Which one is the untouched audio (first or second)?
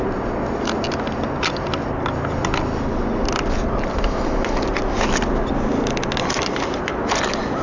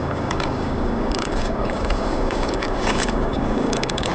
first